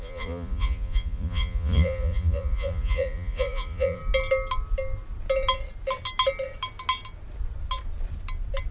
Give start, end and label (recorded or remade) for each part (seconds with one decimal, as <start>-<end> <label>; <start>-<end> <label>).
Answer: 0.0-4.0 remade; 4.0-8.7 recorded